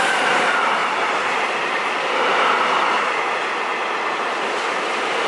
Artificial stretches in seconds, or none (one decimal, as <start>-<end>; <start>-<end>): 0.8-1.4; 2.3-2.9; 3.7-4.5